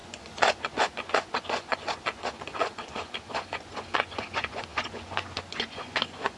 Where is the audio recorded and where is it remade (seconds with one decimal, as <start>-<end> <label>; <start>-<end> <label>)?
0.0-6.4 remade